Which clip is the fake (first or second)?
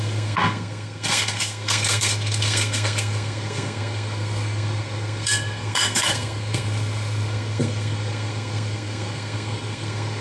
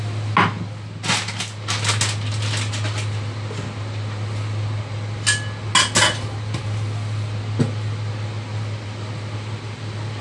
first